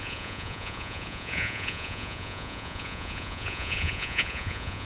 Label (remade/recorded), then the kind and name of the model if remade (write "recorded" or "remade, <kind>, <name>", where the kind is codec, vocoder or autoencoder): remade, vocoder, Vocos